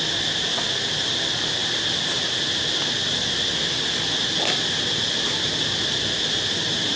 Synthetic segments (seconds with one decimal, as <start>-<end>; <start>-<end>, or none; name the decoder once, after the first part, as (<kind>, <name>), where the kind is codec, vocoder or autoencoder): none